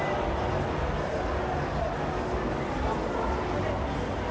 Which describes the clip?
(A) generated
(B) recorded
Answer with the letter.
B